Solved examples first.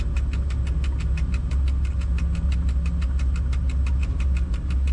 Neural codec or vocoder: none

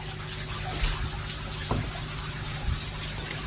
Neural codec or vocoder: none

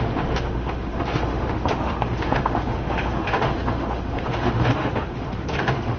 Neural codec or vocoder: autoencoder, DAC-VAE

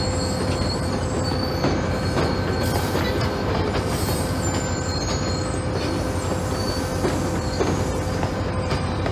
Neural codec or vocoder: none